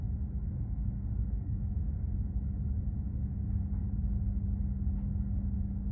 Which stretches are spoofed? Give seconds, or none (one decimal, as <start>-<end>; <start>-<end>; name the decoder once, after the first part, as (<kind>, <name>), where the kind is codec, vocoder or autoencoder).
0.5-1.6 (codec, SNAC)